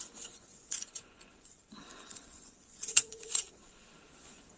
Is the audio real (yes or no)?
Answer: no